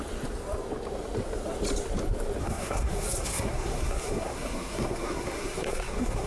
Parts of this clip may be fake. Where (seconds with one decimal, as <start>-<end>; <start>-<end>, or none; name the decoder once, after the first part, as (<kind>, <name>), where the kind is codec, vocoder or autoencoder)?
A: 2.4-6.3 (codec, SNAC)